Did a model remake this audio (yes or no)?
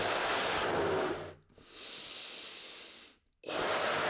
no